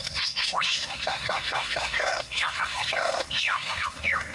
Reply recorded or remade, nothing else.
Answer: remade